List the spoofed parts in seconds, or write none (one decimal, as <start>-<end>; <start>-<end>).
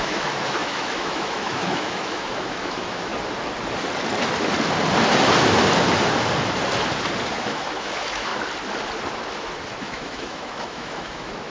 0.0-3.1; 7.3-8.3; 9.8-11.5